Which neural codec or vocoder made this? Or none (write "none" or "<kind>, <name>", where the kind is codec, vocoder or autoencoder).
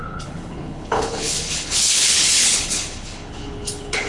codec, HILCodec